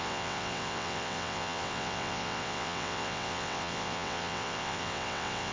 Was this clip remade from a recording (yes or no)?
yes